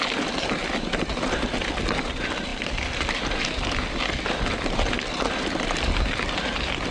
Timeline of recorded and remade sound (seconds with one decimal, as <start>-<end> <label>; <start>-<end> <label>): 0.0-6.9 recorded